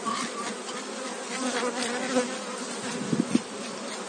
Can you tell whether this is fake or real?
real